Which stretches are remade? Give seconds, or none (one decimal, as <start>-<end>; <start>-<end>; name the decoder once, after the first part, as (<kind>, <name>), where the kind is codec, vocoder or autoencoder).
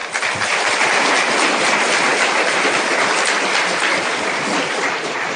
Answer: 0.0-5.4 (vocoder, BigVGAN v2)